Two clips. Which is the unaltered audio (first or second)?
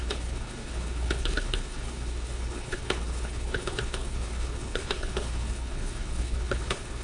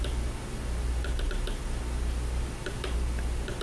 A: second